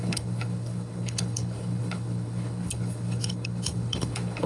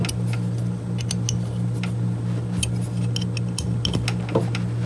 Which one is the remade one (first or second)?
first